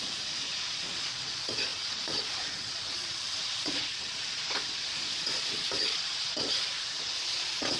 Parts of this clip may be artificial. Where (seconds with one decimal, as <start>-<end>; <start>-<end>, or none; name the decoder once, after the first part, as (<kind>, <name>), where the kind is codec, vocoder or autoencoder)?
0.0-7.8 (vocoder, Vocos)